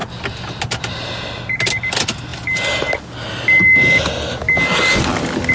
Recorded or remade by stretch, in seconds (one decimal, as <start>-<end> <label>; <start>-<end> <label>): 0.0-5.5 recorded

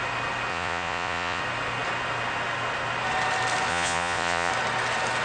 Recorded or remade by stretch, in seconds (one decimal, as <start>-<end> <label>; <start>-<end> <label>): 0.0-0.5 recorded; 0.5-1.4 remade; 1.4-3.7 recorded; 3.7-4.5 remade; 4.5-5.2 recorded

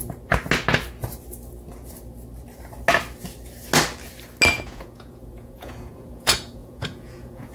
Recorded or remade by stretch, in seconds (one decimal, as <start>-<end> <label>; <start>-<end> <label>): 0.0-4.5 recorded; 4.5-7.5 remade

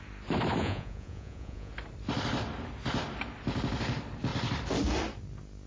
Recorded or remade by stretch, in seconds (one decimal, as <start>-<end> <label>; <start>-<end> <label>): 0.0-0.6 recorded; 0.6-1.7 remade; 1.7-5.7 recorded

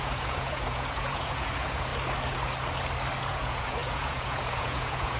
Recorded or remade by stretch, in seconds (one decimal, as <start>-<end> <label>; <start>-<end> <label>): 0.0-1.9 remade; 1.9-3.2 recorded; 3.2-5.2 remade

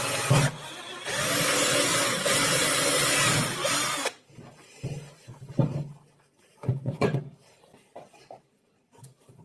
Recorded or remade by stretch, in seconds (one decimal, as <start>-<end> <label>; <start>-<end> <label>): 0.0-1.9 recorded; 1.9-2.9 remade; 2.9-6.6 recorded; 6.6-7.2 remade; 7.2-9.4 recorded

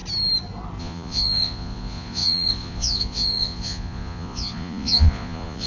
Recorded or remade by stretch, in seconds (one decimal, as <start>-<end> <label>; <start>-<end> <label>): 0.0-0.8 recorded; 0.8-5.7 remade